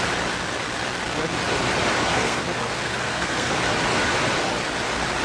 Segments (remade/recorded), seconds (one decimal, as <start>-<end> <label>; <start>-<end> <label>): 0.0-2.1 recorded; 2.1-3.5 remade; 3.5-5.2 recorded